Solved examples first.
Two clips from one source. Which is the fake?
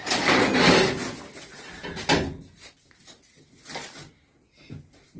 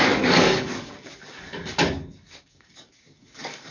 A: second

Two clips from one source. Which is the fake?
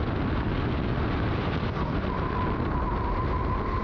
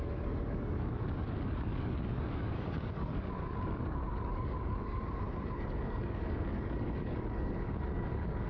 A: second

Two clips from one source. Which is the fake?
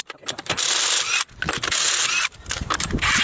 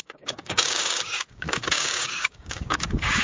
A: second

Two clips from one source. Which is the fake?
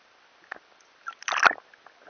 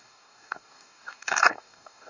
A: second